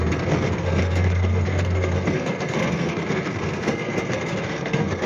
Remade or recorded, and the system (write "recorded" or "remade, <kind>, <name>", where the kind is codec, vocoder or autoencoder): remade, codec, SNAC